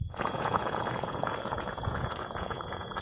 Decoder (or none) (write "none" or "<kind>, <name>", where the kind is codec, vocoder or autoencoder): vocoder, Vocos